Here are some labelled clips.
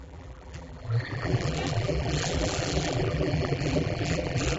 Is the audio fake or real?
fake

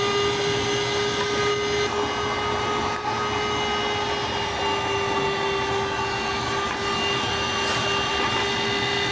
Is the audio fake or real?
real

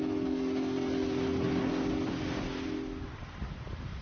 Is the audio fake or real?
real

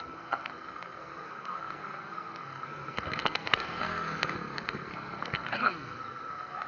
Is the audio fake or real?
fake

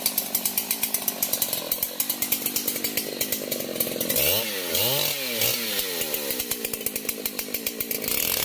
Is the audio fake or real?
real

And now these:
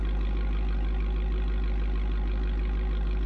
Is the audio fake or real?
real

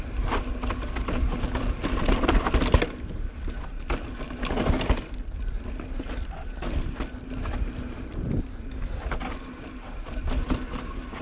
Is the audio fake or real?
real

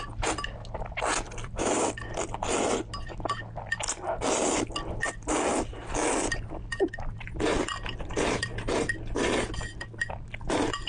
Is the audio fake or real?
real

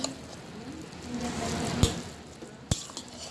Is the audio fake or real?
real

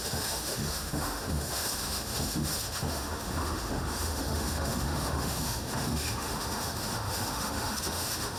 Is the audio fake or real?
fake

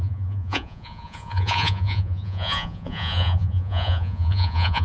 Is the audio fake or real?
fake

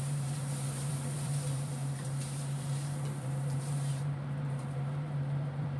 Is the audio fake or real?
fake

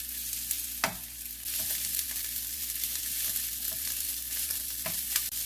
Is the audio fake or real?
real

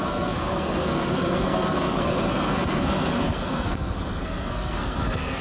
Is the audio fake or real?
fake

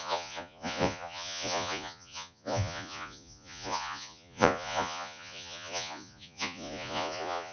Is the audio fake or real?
fake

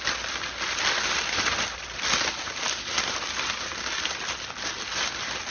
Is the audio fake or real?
real